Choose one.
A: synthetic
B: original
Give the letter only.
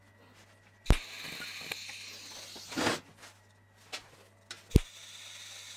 B